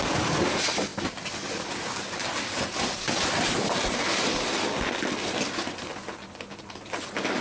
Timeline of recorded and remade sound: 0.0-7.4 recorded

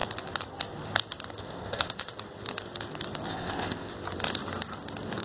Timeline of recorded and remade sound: 0.0-1.4 recorded; 1.4-2.1 remade; 2.1-3.3 recorded; 3.3-3.9 remade; 3.9-5.2 recorded